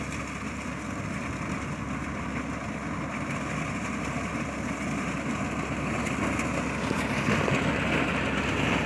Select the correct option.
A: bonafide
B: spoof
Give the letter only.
A